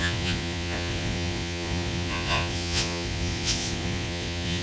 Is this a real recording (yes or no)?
no